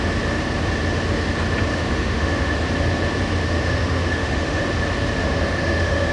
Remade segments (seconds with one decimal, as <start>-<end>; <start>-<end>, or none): 1.7-2.6; 3.4-4.6; 5.2-6.1